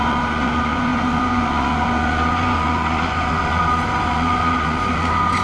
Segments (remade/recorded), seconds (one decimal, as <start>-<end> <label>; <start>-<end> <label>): 0.0-5.4 remade